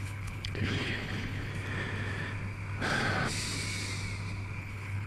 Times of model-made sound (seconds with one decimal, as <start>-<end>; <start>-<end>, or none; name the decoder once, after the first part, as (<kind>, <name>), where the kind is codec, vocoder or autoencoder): 0.0-1.5 (codec, HILCodec); 4.6-5.1